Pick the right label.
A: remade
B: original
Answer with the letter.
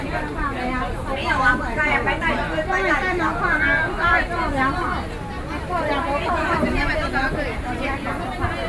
B